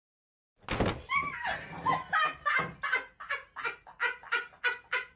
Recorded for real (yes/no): yes